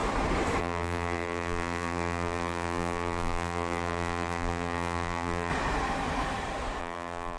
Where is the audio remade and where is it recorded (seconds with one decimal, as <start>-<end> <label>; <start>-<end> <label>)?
0.0-0.6 recorded; 0.6-5.5 remade; 5.5-6.8 recorded; 6.8-7.4 remade